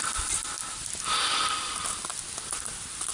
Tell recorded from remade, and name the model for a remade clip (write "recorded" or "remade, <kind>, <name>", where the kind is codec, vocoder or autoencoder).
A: recorded